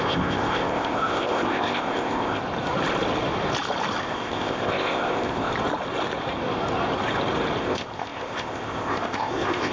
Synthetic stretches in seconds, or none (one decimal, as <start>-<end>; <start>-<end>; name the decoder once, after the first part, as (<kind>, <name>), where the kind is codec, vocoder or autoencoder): 0.0-2.4 (codec, ZipCodec); 4.0-5.5; 7.6-9.7